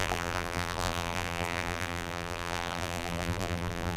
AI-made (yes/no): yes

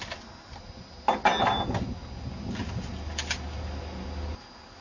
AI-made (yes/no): no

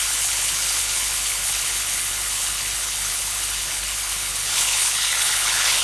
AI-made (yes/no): yes